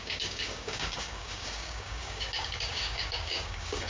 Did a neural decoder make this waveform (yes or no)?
yes